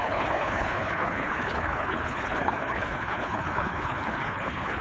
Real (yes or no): no